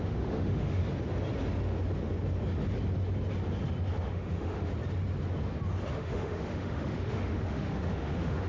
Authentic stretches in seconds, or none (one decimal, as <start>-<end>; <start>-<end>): 0.8-4.1; 4.7-5.9